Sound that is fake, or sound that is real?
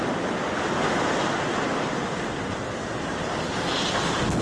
real